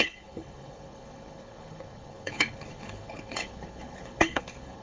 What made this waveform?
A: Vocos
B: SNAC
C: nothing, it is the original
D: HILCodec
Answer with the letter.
D